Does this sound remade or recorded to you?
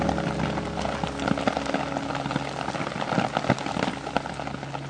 recorded